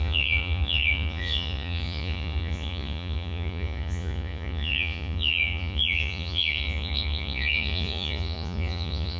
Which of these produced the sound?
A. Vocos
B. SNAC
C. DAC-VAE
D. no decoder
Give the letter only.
A